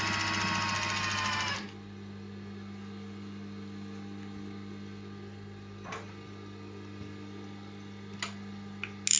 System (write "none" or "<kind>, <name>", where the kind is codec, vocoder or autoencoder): none